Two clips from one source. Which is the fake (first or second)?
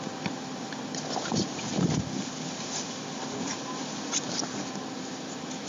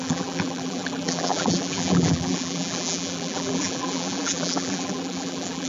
second